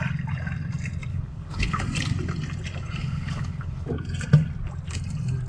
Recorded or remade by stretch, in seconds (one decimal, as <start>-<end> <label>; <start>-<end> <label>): 0.0-1.1 recorded; 1.1-1.8 remade; 1.8-3.0 recorded; 3.0-3.9 remade; 3.9-5.5 recorded